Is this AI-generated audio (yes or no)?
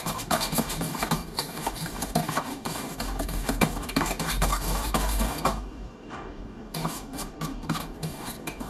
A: yes